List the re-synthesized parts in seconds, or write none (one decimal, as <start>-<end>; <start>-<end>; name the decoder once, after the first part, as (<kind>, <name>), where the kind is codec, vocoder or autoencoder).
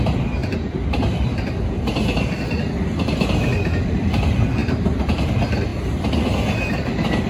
0.4-2.5 (vocoder, BigVGAN v2); 4.6-5.3